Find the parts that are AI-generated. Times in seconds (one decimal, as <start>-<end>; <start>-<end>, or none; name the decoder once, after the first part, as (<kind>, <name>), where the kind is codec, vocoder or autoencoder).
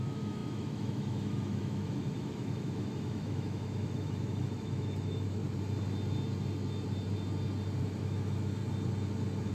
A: 0.0-5.4 (autoencoder, DAC-VAE); 7.8-8.6